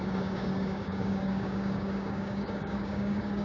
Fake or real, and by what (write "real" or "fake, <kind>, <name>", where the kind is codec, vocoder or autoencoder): fake, codec, DAC